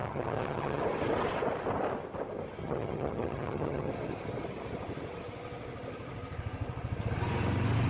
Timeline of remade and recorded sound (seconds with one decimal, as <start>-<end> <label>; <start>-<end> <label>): 0.0-0.8 remade; 0.8-2.6 recorded; 2.6-3.9 remade; 3.9-7.9 recorded